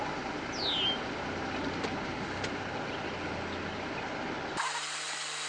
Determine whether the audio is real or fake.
real